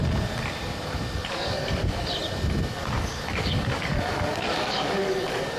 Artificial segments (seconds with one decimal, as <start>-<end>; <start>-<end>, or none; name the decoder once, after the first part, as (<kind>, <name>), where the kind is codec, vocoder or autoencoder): 1.3-2.1 (codec, DAC); 2.7-5.6